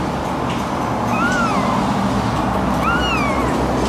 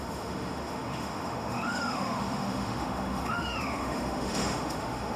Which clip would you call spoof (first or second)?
second